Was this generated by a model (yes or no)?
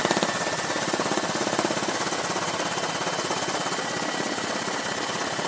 no